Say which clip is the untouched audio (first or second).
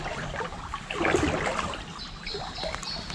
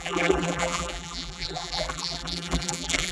first